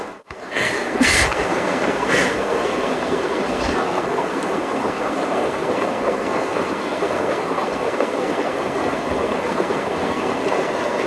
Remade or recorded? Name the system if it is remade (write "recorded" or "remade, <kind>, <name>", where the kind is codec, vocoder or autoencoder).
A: remade, codec, SNAC